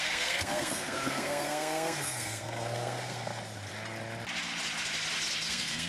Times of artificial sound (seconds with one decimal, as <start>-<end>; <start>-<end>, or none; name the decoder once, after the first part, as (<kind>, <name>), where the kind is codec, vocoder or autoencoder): 0.0-3.3 (codec, SNAC); 5.5-5.9